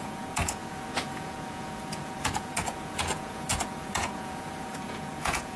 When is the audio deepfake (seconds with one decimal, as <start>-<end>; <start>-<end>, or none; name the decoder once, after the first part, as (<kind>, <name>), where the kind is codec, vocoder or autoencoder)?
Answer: 0.0-5.6 (vocoder, Vocos)